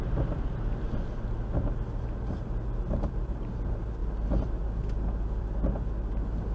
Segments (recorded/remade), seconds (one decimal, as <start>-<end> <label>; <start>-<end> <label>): 0.0-6.5 recorded